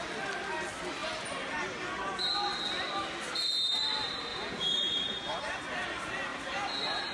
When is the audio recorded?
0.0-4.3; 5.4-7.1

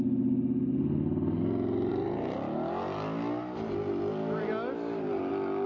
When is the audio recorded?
0.0-5.7

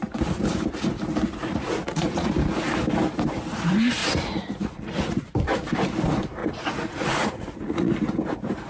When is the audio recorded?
0.0-1.4; 2.3-4.0; 5.3-6.4; 7.9-8.7

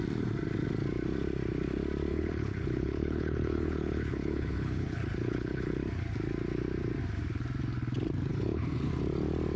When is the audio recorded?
0.0-2.1; 5.8-8.3; 8.9-9.6

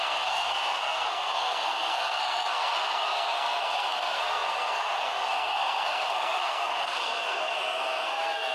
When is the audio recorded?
none

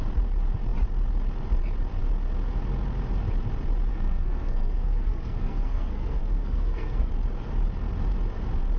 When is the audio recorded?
0.0-3.9; 7.1-8.8

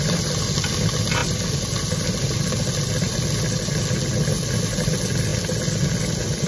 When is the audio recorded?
0.0-6.5